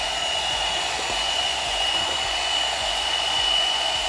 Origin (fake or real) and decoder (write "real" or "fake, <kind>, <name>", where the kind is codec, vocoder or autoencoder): fake, vocoder, Vocos